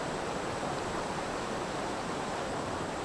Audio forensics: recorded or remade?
remade